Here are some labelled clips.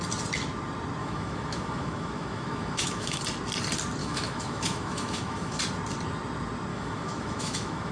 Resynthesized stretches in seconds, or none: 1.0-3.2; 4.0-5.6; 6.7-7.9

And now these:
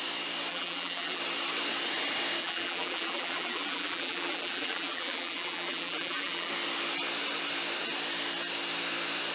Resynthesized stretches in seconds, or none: 0.5-1.2; 2.4-6.5

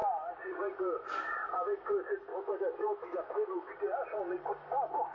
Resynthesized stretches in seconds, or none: 2.3-3.7

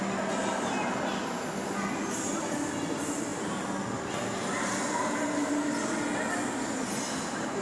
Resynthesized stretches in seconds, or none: none

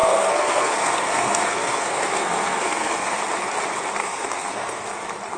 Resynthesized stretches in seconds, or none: 0.0-3.2; 4.0-4.8

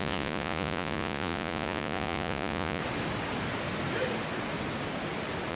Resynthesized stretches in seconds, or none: 0.0-2.8